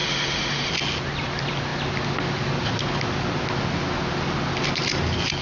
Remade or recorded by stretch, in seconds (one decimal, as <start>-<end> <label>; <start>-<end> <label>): 0.0-0.7 remade; 0.7-5.4 recorded